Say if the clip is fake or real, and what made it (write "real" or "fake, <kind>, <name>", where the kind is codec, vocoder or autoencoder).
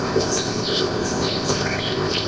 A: fake, codec, ZipCodec